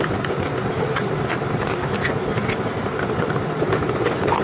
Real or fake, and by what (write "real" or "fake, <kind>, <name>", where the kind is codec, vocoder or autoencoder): fake, vocoder, BigVGAN v2